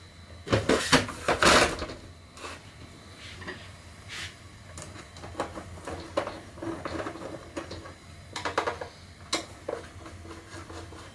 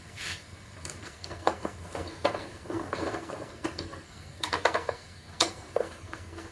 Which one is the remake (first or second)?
second